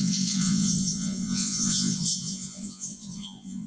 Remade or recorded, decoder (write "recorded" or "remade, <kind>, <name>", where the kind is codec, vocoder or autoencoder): remade, vocoder, Vocos